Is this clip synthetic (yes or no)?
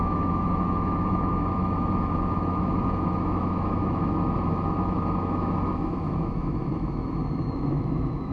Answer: yes